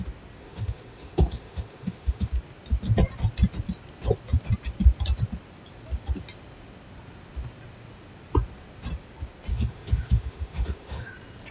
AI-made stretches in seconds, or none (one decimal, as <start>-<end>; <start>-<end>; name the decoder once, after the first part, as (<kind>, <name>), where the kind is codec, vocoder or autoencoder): 0.4-2.3 (autoencoder, DAC-VAE); 9.5-11.1